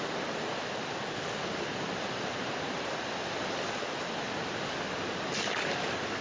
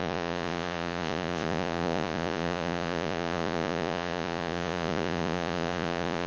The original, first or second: first